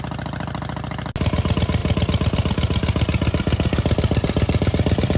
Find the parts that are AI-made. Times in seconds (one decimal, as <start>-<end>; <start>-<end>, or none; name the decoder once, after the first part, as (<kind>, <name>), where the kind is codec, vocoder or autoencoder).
1.8-5.2 (vocoder, BigVGAN v2)